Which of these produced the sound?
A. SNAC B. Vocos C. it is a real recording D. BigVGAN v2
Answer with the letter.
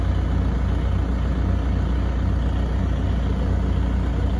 C